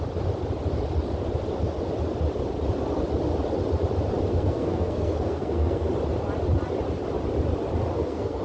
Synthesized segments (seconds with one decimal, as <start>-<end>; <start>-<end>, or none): 4.3-5.9; 7.9-8.4